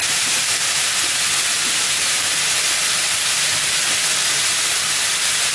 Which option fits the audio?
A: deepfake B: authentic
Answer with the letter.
B